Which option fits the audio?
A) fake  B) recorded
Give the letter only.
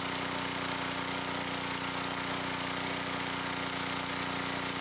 B